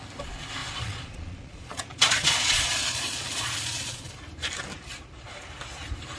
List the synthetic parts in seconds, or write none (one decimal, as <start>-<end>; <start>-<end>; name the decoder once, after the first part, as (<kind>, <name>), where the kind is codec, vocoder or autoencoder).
0.6-4.1 (vocoder, Vocos)